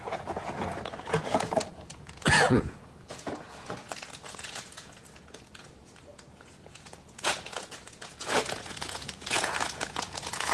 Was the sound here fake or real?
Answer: fake